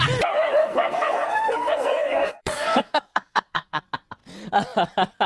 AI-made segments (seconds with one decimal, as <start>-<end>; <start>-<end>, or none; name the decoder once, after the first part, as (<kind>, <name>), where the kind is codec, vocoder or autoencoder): 0.6-3.8 (codec, SNAC)